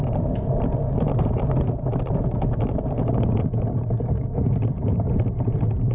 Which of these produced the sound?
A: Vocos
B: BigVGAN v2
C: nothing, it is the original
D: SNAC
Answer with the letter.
C